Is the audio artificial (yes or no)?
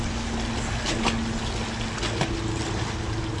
no